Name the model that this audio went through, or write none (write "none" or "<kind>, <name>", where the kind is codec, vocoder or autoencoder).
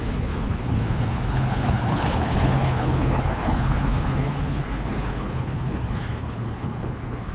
codec, HILCodec